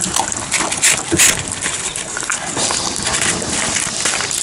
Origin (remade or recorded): recorded